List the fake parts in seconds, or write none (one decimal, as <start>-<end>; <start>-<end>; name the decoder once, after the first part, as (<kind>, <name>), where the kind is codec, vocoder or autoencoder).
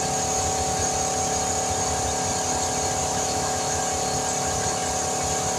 3.0-3.8 (autoencoder, DAC-VAE)